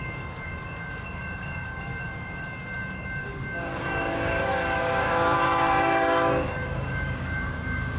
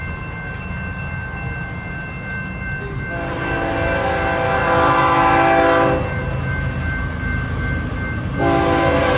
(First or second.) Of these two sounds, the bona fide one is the second